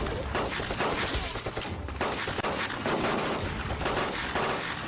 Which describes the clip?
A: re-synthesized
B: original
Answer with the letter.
B